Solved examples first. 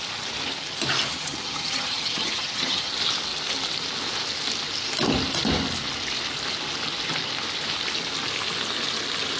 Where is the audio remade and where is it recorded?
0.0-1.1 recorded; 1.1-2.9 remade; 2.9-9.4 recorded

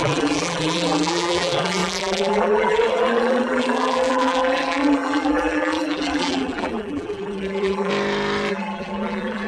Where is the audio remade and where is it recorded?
0.0-7.9 remade; 7.9-8.5 recorded; 8.5-9.5 remade

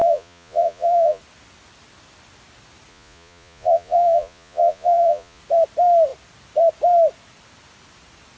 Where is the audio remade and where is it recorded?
0.0-1.2 remade; 1.2-2.9 recorded; 2.9-5.4 remade; 5.4-8.4 recorded

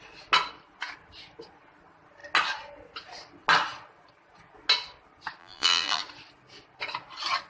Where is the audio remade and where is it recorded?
0.0-5.4 recorded; 5.4-6.0 remade; 6.0-7.5 recorded

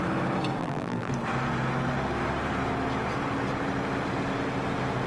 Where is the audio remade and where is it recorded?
0.0-0.6 recorded; 0.6-1.1 remade; 1.1-5.1 recorded

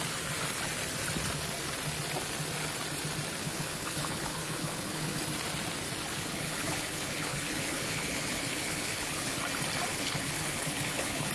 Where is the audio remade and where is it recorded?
0.0-3.4 recorded; 3.4-5.2 remade; 5.2-6.1 recorded; 6.1-9.4 remade; 9.4-9.9 recorded; 9.9-11.3 remade

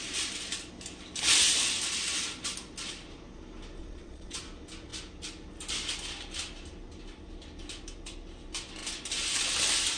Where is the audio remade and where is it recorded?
0.0-3.8 recorded; 3.8-4.4 remade; 4.4-10.0 recorded

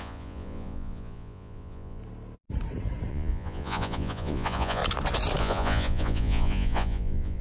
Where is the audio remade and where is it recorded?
0.0-2.0 remade; 2.0-3.1 recorded; 3.1-4.8 remade; 4.8-5.4 recorded; 5.4-7.4 remade